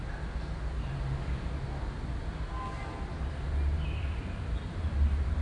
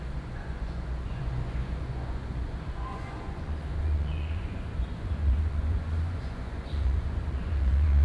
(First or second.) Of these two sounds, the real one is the first